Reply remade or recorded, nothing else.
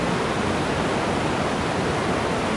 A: recorded